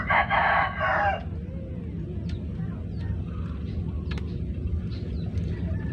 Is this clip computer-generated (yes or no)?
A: no